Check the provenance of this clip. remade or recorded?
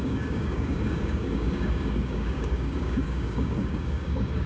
remade